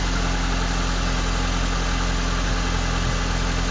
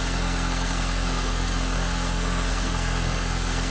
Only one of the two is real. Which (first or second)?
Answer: first